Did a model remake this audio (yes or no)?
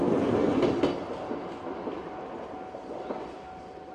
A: no